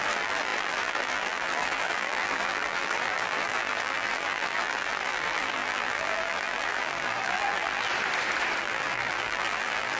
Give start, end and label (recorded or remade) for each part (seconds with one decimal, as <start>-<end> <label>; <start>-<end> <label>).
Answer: 0.0-7.9 remade; 7.9-8.6 recorded; 8.6-10.0 remade